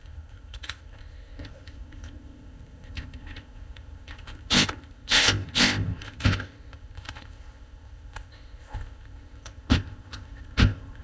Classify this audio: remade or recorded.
remade